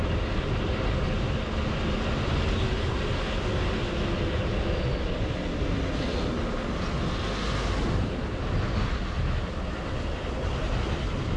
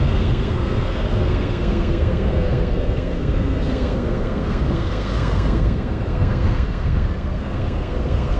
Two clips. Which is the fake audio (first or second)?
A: second